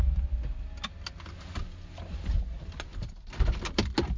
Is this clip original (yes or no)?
yes